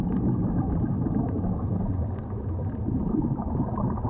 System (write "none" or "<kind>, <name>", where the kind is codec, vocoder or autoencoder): none